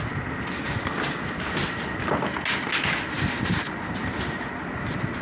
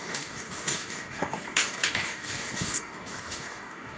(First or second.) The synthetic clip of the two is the second